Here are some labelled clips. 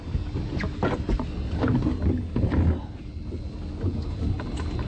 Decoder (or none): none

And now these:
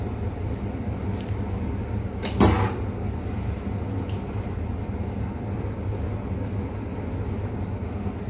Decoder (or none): none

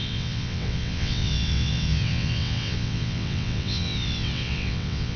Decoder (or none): vocoder, WaveNeXt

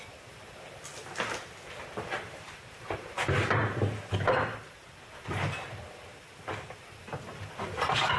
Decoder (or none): none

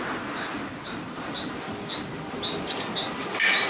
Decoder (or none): none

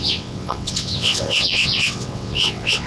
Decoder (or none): vocoder, WaveNeXt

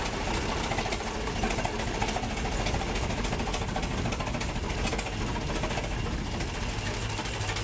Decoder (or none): none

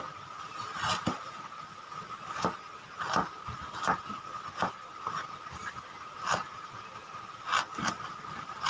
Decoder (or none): none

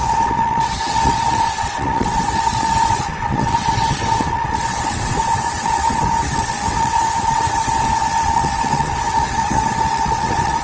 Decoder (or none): vocoder, WaveNeXt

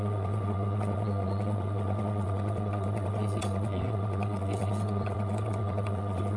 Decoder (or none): vocoder, WaveNeXt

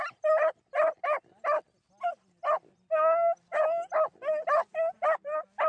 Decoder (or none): none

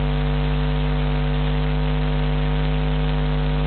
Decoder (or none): none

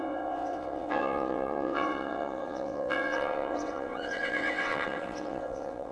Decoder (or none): vocoder, WaveNeXt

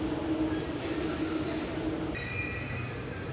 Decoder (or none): none